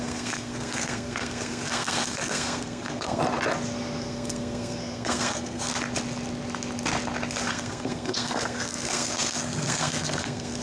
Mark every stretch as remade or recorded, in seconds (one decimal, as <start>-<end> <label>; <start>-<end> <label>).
0.0-3.2 remade; 3.2-4.0 recorded; 4.0-5.7 remade; 5.7-7.5 recorded; 7.5-10.6 remade